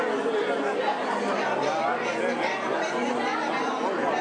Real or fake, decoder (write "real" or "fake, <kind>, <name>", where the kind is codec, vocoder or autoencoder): real